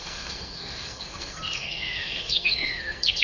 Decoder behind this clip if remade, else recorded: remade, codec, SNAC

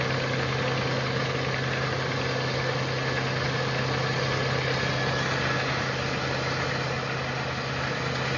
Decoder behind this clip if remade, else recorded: recorded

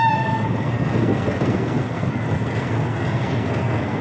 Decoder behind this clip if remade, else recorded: remade, codec, SNAC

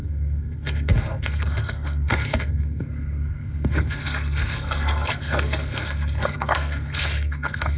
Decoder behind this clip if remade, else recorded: remade, codec, SNAC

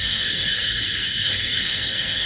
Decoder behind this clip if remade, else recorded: remade, codec, SNAC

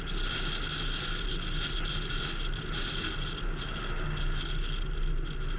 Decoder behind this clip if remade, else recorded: recorded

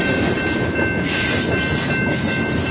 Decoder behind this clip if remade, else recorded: recorded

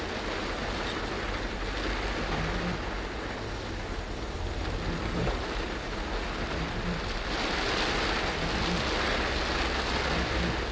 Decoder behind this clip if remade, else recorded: recorded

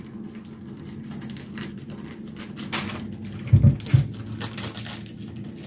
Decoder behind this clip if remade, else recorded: recorded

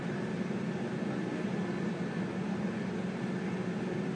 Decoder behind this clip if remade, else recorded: recorded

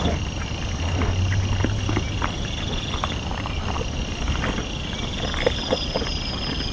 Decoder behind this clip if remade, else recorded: recorded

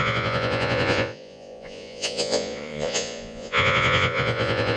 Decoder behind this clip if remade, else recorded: remade, vocoder, Vocos